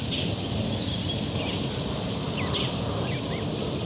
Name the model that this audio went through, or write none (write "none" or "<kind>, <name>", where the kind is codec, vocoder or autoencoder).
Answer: none